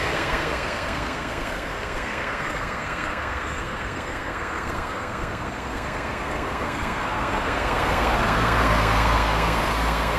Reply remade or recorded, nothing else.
remade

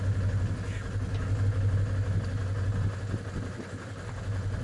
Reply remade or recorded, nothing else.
recorded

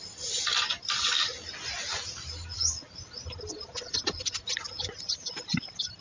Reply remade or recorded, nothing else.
recorded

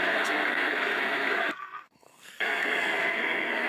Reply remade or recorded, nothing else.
remade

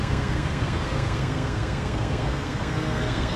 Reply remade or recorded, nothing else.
remade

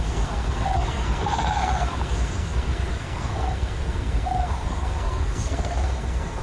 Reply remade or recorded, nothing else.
remade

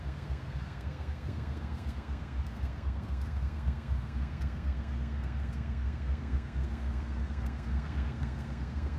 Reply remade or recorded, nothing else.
remade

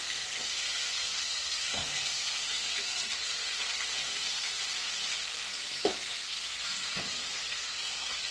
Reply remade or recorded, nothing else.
remade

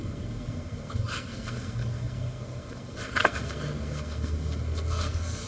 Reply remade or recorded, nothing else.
remade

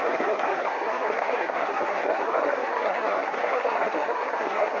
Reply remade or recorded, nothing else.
remade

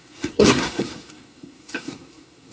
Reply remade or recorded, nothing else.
remade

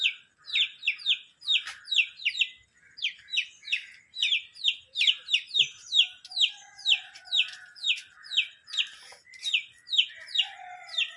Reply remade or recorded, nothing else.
recorded